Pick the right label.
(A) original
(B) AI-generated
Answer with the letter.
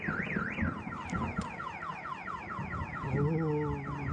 A